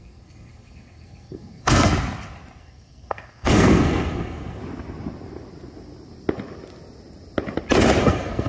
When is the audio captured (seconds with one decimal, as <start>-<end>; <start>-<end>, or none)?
1.9-2.6; 4.6-8.0